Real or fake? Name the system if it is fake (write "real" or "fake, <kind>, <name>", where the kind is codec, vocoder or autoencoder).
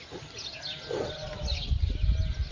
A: real